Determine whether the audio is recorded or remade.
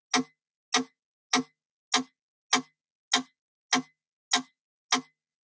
recorded